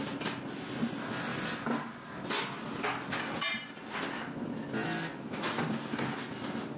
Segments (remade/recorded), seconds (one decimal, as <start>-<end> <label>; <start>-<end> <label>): 0.0-6.8 recorded